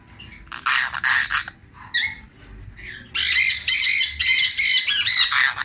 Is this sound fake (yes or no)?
no